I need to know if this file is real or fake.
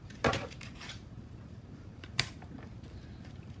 fake